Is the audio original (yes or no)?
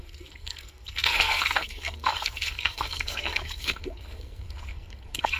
no